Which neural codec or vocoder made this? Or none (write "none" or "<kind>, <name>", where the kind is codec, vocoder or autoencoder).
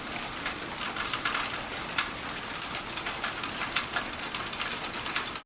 none